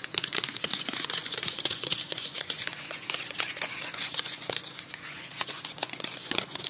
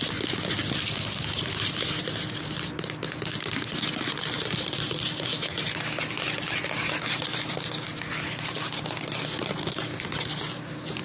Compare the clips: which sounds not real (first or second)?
first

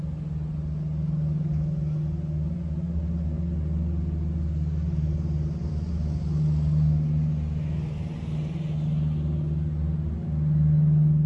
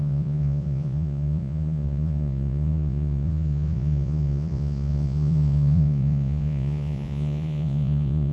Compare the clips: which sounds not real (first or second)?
second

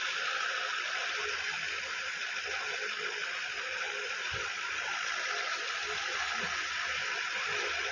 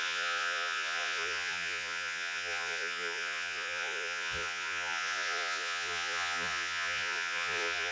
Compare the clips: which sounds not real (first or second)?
second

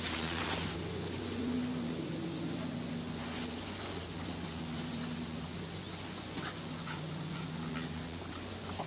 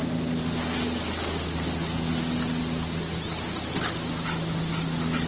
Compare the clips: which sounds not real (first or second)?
first